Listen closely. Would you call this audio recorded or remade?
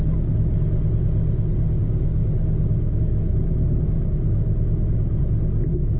recorded